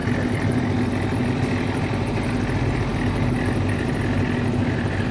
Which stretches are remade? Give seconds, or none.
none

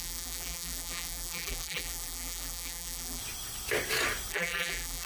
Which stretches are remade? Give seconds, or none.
0.0-3.2 (vocoder, BigVGAN v2); 4.3-5.1